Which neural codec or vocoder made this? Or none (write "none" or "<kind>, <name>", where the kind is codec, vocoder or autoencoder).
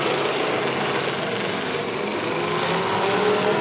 none